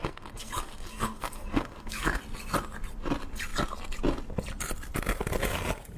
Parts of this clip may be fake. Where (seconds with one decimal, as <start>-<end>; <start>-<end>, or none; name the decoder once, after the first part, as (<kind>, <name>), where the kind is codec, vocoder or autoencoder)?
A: 0.0-2.2 (codec, SNAC)